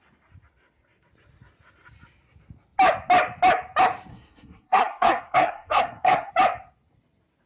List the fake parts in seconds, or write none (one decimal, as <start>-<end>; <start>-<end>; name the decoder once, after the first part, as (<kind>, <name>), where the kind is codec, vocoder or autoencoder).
4.1-6.3 (codec, SNAC)

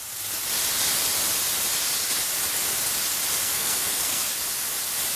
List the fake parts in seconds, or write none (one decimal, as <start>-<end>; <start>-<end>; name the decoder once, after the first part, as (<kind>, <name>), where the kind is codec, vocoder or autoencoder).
3.4-4.3 (codec, SNAC)

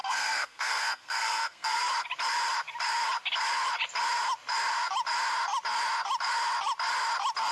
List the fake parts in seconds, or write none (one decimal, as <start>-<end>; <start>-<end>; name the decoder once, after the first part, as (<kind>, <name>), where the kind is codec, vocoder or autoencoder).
0.0-1.8 (codec, SNAC)

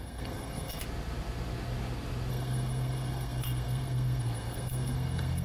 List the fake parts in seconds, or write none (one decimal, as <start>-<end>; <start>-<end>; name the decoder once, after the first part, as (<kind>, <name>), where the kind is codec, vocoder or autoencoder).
0.0-0.8 (codec, SNAC); 2.3-5.4

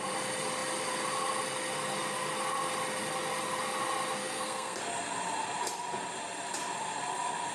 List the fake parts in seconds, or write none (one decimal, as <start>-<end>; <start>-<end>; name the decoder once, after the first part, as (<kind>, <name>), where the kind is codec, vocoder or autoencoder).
4.2-4.8 (codec, SNAC)

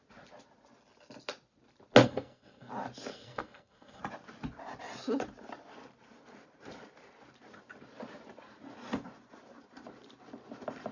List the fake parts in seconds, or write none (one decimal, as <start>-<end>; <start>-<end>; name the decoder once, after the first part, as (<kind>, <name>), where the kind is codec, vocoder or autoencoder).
2.0-2.7 (codec, SNAC); 3.1-4.0